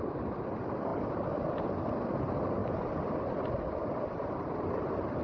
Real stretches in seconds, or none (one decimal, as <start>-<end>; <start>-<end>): 0.0-5.2